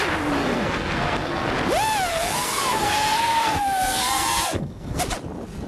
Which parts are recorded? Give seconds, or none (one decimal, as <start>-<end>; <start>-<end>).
0.0-0.4; 1.5-2.1; 5.0-5.7